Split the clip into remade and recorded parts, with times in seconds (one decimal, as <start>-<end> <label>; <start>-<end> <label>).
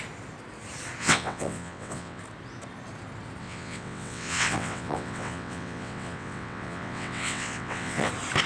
0.0-1.0 recorded; 1.0-2.2 remade; 2.2-3.4 recorded; 3.4-8.1 remade; 8.1-8.5 recorded